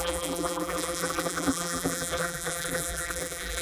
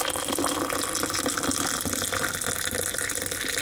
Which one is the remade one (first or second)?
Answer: first